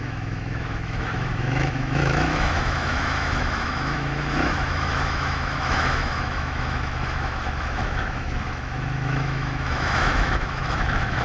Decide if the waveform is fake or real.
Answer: fake